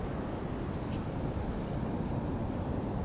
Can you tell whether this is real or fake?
real